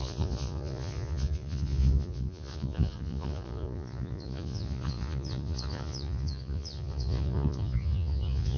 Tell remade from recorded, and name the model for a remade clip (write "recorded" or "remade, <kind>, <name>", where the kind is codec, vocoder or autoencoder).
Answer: remade, vocoder, Vocos